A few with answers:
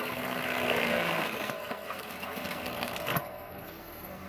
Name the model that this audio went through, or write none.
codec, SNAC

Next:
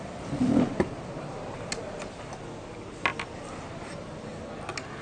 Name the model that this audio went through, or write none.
none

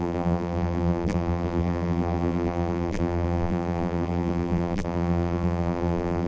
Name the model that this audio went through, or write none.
vocoder, BigVGAN v2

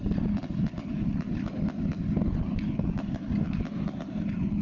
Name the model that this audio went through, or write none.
none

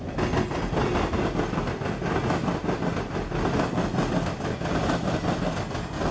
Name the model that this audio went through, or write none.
none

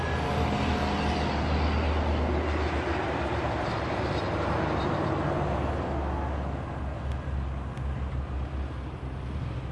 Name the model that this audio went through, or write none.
none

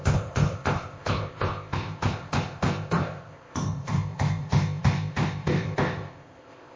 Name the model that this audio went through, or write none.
codec, ZipCodec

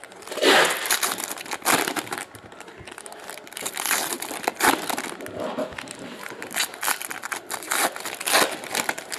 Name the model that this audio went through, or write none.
vocoder, BigVGAN v2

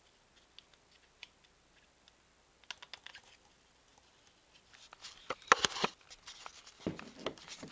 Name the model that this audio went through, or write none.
none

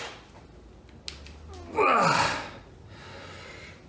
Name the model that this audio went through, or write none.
none